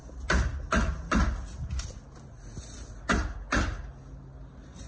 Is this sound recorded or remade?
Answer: recorded